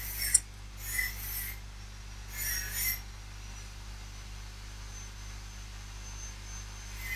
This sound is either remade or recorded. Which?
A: recorded